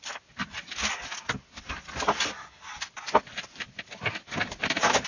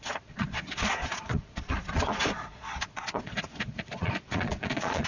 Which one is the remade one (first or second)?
second